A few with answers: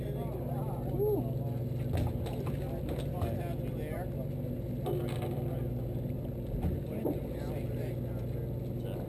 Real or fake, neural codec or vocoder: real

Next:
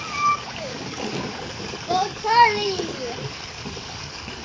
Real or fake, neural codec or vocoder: fake, codec, DAC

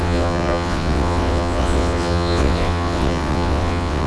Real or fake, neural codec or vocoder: fake, vocoder, WaveNeXt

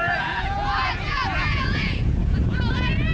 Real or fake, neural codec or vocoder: fake, vocoder, Vocos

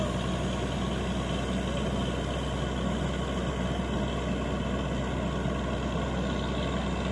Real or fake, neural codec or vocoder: real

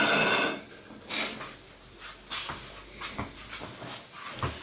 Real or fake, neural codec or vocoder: real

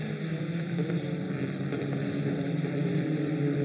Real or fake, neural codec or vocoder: real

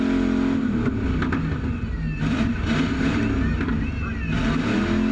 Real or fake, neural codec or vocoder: real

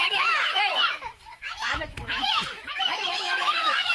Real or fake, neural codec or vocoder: fake, autoencoder, DAC-VAE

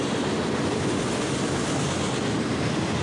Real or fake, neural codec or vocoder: real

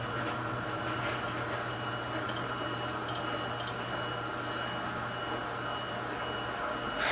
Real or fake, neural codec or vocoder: real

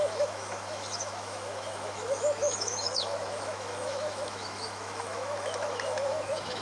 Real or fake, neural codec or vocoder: fake, autoencoder, DAC-VAE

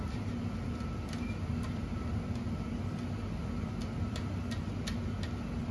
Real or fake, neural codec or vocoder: real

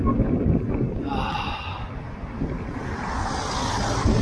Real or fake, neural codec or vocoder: real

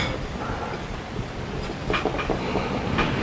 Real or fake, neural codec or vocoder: real